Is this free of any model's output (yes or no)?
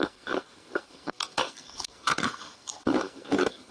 no